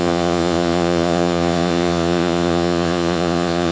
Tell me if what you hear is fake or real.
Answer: fake